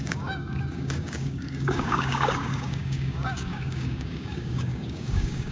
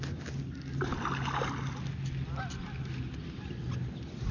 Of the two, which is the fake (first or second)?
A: first